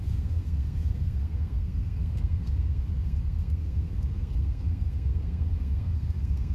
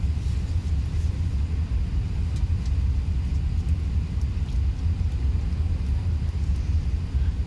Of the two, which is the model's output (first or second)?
first